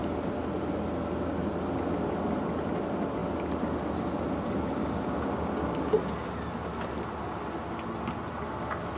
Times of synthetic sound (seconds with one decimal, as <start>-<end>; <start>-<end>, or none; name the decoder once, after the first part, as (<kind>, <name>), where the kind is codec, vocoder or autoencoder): none